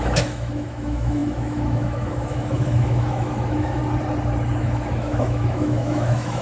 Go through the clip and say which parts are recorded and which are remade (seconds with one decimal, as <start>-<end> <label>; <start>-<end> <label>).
0.0-3.8 remade; 3.8-4.6 recorded; 4.6-6.4 remade